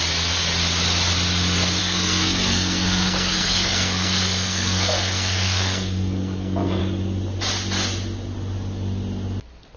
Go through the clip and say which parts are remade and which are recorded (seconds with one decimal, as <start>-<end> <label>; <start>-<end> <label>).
0.0-1.8 recorded; 1.8-6.8 remade; 6.8-9.8 recorded